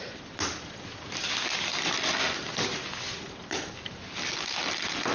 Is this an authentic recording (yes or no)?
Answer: yes